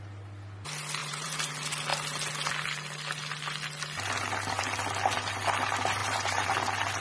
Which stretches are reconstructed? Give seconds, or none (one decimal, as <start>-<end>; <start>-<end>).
1.0-1.5; 6.0-6.5